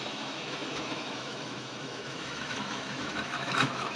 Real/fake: fake